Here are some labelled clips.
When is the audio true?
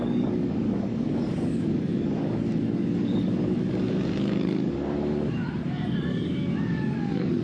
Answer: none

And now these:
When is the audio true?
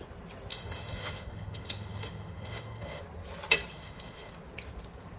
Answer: 0.0-0.5; 3.0-3.7; 4.3-5.2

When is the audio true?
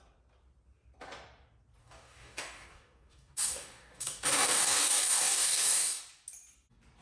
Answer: 0.0-1.8; 6.0-7.0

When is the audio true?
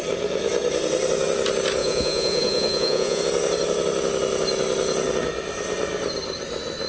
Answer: 0.0-1.8; 3.2-6.9